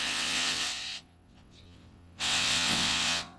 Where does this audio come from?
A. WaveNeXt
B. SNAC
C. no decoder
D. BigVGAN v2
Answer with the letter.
A